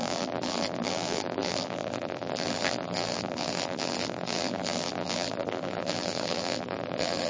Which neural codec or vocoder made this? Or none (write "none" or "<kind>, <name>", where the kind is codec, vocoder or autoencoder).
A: vocoder, BigVGAN v2